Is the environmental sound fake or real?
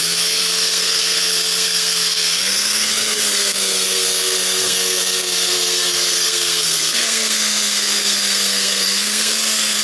fake